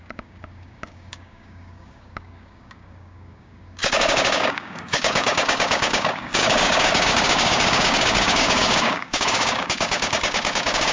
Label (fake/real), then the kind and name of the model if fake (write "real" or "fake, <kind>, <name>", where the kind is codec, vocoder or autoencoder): fake, codec, DAC